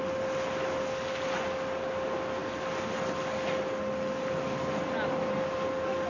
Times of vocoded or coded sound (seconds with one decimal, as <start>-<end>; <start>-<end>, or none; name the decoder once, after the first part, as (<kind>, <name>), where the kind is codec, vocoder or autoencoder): none